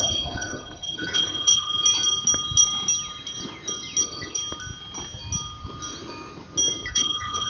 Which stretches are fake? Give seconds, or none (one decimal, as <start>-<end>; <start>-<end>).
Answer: 0.0-1.7; 4.0-4.4; 6.9-7.5